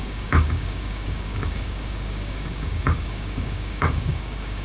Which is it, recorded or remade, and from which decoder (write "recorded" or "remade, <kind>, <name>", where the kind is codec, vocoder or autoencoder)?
remade, codec, DAC